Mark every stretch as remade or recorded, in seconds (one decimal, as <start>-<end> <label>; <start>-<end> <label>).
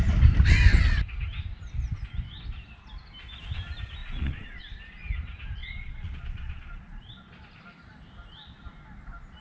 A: 0.0-4.0 recorded; 4.0-4.6 remade; 4.6-5.6 recorded; 5.6-7.3 remade; 7.3-9.4 recorded